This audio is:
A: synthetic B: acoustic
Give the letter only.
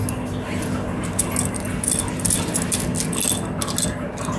B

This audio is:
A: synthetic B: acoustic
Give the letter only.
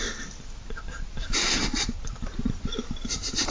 A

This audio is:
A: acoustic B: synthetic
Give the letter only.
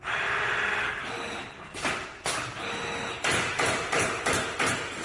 A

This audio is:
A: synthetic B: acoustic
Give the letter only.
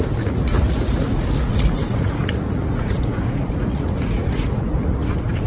A